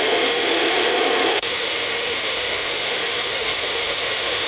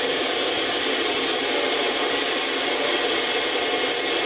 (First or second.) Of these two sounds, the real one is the second